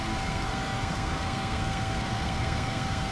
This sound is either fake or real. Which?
fake